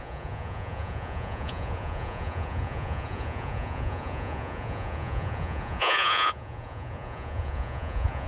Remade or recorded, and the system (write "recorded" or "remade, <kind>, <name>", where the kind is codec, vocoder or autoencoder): remade, vocoder, Vocos